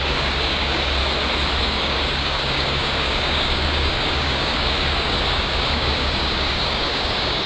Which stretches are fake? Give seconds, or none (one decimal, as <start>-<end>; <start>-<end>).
0.0-1.0; 1.6-7.5